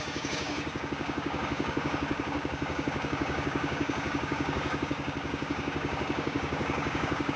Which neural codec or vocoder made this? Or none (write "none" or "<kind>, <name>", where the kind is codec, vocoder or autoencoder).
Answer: codec, DAC